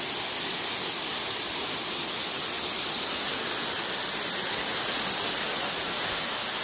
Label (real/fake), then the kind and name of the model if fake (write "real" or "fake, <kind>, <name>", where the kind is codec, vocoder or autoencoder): real